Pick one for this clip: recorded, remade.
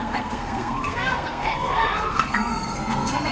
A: remade